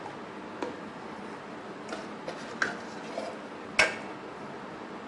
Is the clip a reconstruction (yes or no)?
no